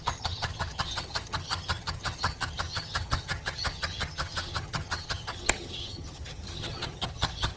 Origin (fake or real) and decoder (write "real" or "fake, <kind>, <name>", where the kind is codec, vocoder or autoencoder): fake, vocoder, HiFi-GAN